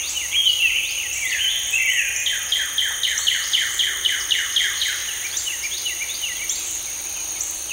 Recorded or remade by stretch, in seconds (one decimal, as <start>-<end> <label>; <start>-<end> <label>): 0.0-5.0 recorded; 5.0-5.9 remade; 5.9-7.7 recorded